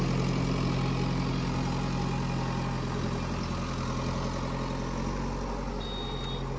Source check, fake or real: real